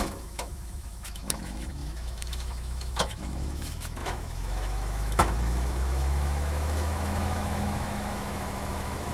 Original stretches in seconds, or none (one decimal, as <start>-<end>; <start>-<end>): none